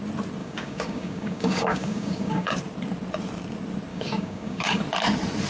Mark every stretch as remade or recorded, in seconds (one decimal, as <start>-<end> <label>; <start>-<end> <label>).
0.0-0.4 recorded; 0.4-2.5 remade; 2.5-3.9 recorded; 3.9-4.8 remade; 4.8-5.5 recorded